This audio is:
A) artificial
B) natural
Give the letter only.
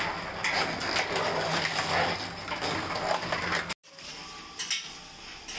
B